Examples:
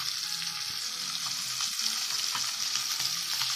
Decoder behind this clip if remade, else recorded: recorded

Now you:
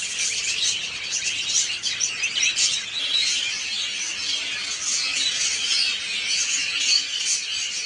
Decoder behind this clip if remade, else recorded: recorded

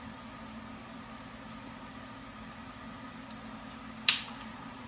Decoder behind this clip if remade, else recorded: recorded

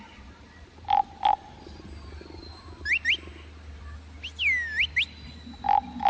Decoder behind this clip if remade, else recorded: recorded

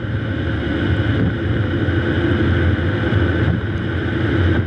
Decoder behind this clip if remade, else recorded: recorded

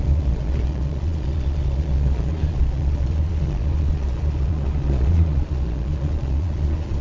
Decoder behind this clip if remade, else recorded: remade, vocoder, Vocos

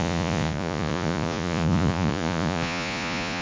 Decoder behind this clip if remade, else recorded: remade, vocoder, Vocos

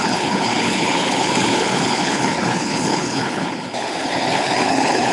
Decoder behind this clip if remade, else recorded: remade, codec, HILCodec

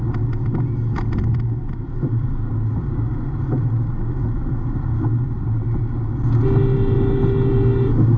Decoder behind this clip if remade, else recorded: recorded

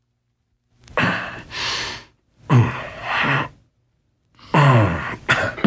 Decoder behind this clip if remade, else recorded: recorded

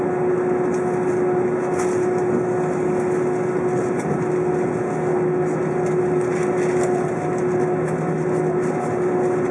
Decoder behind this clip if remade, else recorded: recorded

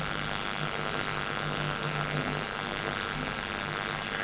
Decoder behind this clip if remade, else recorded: remade, codec, SNAC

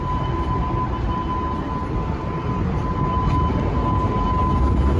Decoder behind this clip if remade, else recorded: recorded